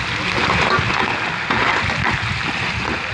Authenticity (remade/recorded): recorded